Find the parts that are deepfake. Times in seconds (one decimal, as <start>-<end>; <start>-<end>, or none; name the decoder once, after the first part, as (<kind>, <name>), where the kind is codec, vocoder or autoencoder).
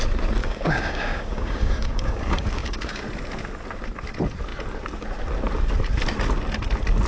0.4-3.0 (codec, DAC)